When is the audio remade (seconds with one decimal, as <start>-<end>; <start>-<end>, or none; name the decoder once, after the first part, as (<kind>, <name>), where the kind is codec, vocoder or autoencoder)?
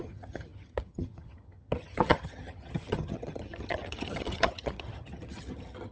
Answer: 0.0-5.9 (vocoder, HiFi-GAN)